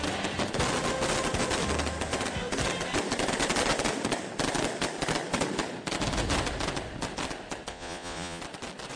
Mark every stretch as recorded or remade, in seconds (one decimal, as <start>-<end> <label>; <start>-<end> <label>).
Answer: 0.0-7.7 recorded; 7.7-8.4 remade; 8.4-9.0 recorded